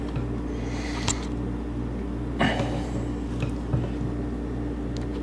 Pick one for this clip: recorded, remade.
recorded